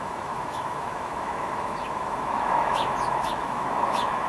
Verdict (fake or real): fake